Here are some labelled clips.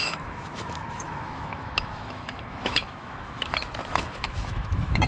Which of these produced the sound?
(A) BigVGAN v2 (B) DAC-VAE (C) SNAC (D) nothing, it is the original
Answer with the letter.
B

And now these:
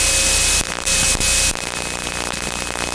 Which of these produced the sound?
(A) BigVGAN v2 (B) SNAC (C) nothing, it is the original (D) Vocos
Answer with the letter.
C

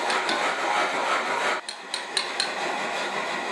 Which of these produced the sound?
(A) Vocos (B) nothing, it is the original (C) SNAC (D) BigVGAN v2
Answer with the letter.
B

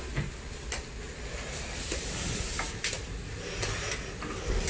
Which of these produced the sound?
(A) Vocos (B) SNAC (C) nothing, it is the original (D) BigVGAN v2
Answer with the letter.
C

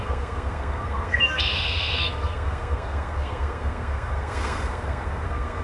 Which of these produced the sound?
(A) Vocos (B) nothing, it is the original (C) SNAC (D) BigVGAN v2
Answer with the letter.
C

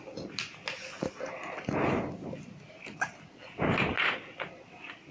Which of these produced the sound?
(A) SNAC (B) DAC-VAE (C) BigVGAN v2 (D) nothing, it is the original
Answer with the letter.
D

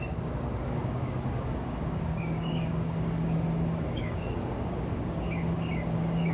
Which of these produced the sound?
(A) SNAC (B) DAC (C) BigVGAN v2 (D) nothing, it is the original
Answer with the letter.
B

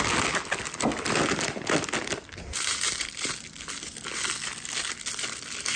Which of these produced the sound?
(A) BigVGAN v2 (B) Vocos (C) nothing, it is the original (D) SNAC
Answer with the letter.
C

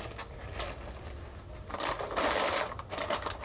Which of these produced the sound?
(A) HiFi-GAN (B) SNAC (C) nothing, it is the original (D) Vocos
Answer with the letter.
C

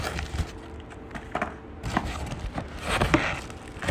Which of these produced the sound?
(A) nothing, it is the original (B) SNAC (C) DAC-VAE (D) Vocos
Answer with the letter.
A